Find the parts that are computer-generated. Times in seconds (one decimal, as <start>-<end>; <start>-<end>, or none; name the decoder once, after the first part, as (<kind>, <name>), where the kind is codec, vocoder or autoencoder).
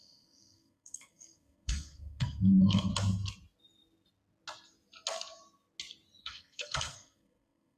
0.0-2.9 (codec, SNAC); 6.2-7.8